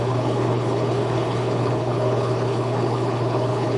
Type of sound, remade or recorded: remade